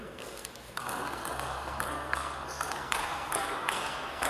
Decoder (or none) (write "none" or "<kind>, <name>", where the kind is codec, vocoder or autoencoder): codec, SNAC